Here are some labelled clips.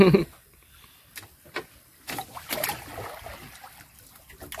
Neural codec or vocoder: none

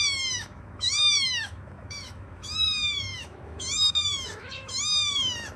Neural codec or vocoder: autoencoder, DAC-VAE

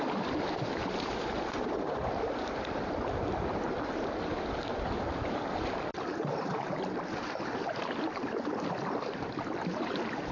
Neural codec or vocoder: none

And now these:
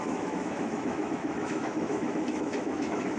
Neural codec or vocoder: autoencoder, DAC-VAE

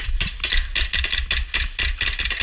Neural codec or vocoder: none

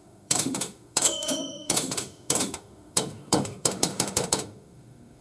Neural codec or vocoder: autoencoder, DAC-VAE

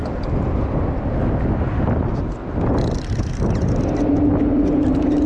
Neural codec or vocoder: none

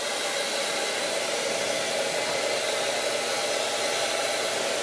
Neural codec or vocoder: none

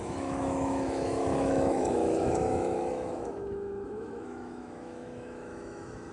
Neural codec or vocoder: autoencoder, DAC-VAE